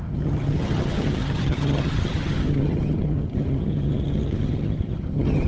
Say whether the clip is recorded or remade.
remade